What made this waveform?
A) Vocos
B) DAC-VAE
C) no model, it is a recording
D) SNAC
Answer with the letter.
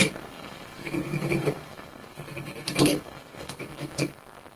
D